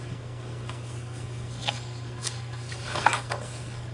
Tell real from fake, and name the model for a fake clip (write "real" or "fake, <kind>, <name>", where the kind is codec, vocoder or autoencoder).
fake, codec, SNAC